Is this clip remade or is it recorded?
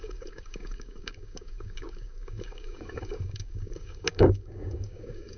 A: remade